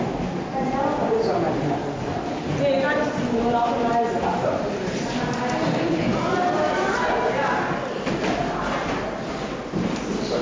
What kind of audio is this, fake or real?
real